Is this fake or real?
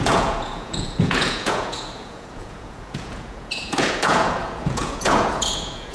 fake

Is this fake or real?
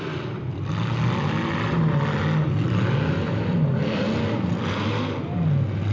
real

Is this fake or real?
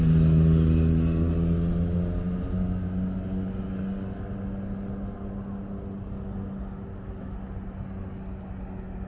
real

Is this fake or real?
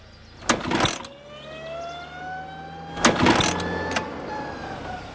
real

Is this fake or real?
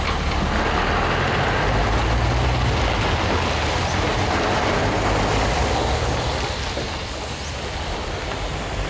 real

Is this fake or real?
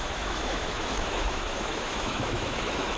fake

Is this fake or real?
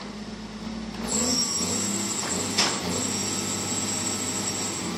real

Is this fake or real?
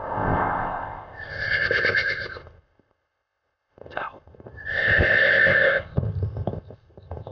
fake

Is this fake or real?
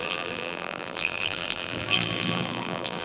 fake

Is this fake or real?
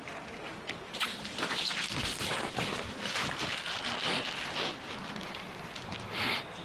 real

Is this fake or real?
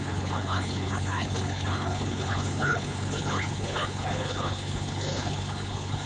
fake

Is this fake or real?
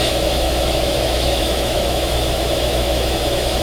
fake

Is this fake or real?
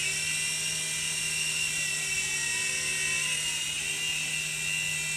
real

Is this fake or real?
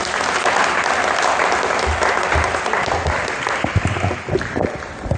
real